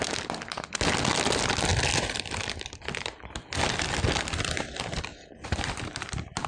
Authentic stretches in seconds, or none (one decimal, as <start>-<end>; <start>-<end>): 0.0-5.1